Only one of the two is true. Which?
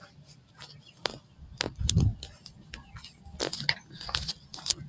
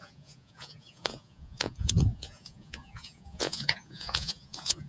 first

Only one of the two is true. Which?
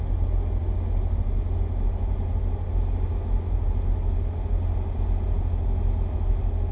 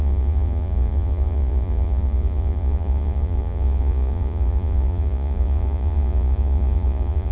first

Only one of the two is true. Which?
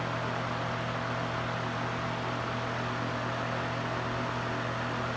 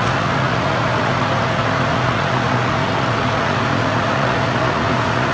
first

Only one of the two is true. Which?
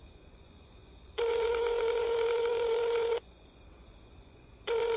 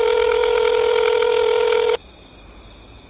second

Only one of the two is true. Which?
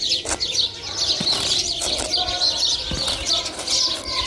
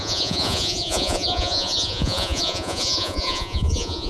first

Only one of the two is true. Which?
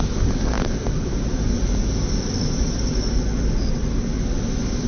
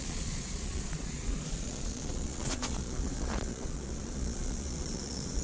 first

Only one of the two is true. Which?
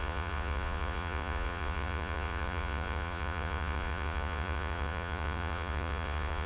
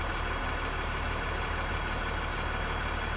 second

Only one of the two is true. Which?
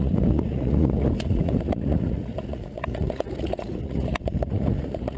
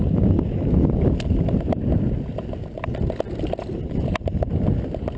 second